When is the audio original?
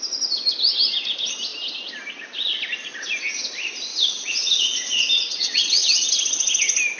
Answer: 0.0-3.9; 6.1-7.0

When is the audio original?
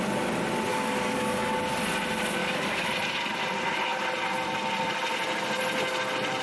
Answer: 0.0-0.7; 1.6-2.4; 2.9-6.4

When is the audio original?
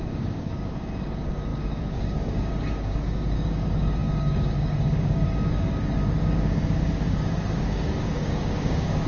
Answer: none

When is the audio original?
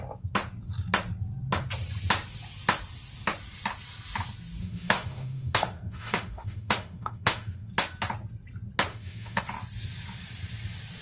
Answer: 0.0-4.6; 7.7-8.9; 9.4-11.0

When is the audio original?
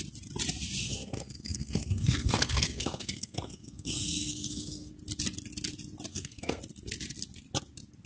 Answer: 0.0-0.8; 4.9-6.1; 6.6-8.1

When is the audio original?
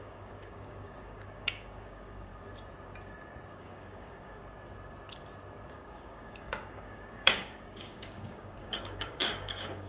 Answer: 2.3-3.5; 4.4-5.7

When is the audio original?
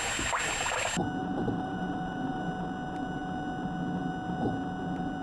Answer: 0.0-1.2; 2.4-5.2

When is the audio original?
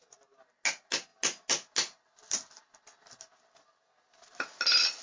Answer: 0.0-5.0